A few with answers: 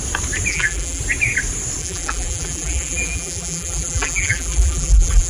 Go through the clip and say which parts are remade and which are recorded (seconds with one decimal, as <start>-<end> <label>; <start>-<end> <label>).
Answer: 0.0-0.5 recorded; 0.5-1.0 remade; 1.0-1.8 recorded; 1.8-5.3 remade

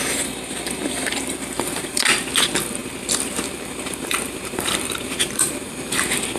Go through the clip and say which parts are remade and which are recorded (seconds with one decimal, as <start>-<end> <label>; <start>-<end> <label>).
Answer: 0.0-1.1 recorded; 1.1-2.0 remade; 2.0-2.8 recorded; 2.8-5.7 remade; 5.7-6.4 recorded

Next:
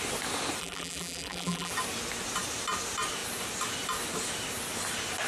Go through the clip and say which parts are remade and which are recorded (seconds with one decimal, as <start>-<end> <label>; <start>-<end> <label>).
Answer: 0.0-0.6 recorded; 0.6-1.7 remade; 1.7-5.3 recorded